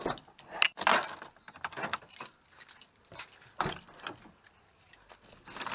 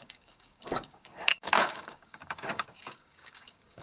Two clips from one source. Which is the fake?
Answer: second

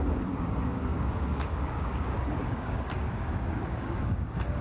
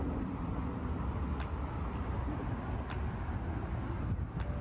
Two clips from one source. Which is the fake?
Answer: first